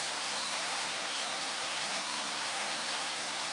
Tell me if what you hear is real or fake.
fake